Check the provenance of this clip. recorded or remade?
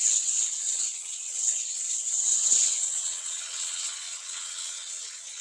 remade